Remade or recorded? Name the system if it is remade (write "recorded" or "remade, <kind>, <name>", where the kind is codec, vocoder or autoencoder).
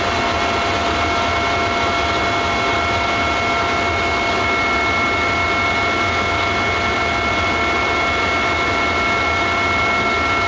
recorded